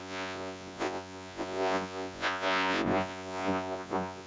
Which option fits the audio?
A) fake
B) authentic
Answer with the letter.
A